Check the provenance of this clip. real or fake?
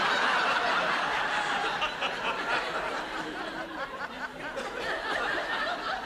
fake